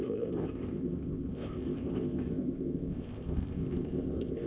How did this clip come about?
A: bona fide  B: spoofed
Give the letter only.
B